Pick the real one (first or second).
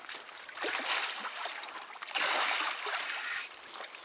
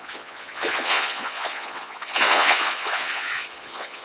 first